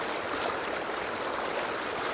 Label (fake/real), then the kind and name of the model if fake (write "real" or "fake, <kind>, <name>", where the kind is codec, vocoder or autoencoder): real